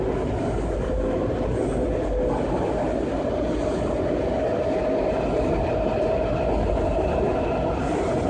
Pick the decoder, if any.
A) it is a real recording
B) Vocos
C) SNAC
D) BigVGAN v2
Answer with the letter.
A